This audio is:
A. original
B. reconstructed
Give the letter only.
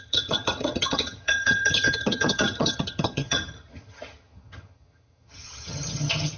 B